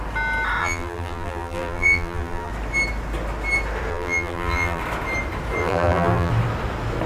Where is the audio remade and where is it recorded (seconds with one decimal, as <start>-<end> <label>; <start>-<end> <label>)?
0.0-0.6 recorded; 0.6-2.5 remade; 2.5-3.9 recorded; 3.9-4.8 remade; 4.8-5.6 recorded; 5.6-6.3 remade; 6.3-7.1 recorded

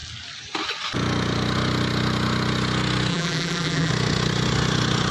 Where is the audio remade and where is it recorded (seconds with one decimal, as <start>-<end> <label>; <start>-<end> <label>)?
0.0-3.1 recorded; 3.1-3.9 remade; 3.9-5.1 recorded